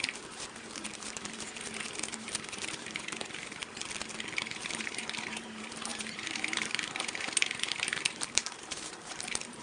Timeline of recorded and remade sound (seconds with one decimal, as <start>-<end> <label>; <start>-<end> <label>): 0.0-3.6 remade; 3.6-4.4 recorded; 4.4-9.6 remade